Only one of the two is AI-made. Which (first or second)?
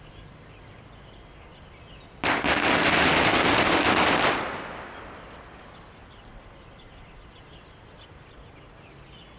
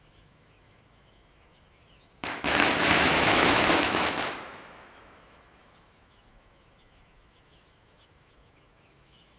second